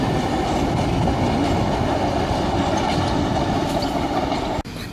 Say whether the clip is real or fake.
real